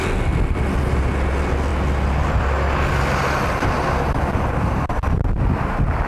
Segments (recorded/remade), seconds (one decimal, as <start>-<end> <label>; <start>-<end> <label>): 0.0-6.1 recorded